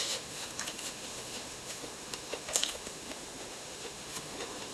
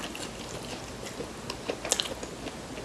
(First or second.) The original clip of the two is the second